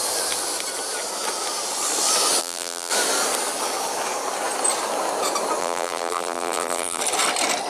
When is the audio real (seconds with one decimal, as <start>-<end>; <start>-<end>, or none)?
0.0-2.4; 2.9-5.6; 7.0-7.7